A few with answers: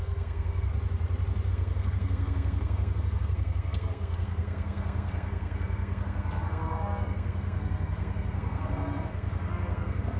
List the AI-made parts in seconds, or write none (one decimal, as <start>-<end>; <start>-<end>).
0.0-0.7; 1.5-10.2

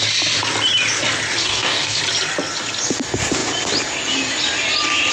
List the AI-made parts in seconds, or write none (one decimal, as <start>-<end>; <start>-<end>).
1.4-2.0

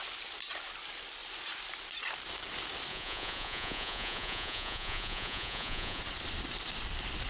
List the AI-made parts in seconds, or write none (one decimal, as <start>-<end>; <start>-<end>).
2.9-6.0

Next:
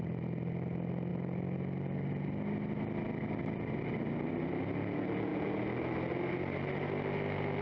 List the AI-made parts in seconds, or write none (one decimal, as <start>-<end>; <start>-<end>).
none

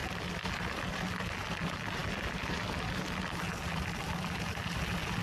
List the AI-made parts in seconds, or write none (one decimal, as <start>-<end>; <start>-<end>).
none